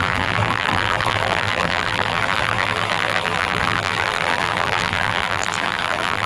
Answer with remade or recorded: remade